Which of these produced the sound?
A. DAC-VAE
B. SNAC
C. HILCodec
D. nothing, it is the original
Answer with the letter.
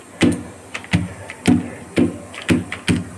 D